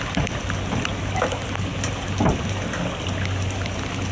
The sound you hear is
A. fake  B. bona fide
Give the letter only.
B